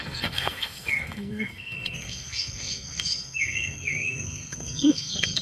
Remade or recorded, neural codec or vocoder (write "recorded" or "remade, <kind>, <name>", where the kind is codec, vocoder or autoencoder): remade, codec, SNAC